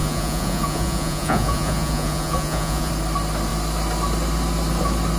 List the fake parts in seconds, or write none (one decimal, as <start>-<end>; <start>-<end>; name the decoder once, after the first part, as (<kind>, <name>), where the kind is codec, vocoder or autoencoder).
0.0-2.9 (vocoder, Vocos)